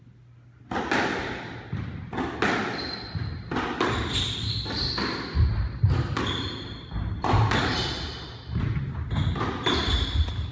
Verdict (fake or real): real